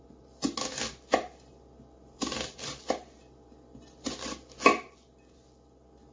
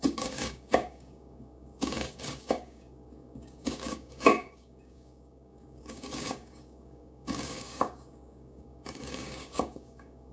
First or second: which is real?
first